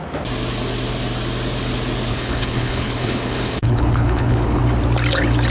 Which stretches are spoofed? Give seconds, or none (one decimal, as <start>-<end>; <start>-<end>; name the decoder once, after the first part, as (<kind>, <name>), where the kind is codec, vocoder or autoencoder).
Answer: 2.1-4.6 (codec, HILCodec)